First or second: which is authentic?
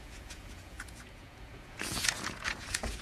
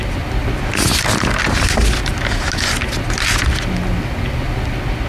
second